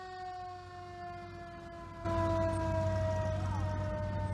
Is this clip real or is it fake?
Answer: real